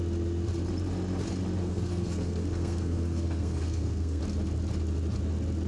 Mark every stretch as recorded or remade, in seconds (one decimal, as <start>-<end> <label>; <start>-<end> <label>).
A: 0.0-1.6 recorded; 1.6-4.2 remade; 4.2-5.7 recorded